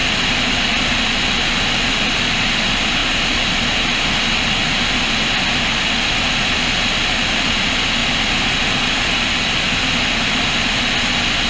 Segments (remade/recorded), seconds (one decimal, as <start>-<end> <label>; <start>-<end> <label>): 0.0-11.5 recorded